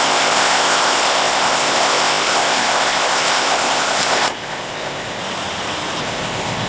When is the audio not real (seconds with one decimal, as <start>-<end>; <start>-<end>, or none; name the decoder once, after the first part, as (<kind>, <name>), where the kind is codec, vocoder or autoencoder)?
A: 0.0-5.2 (codec, ZipCodec); 6.0-6.7